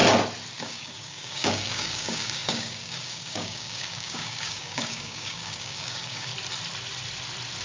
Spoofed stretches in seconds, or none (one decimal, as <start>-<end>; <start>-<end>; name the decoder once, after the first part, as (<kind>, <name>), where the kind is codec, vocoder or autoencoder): 0.6-6.3 (codec, DAC)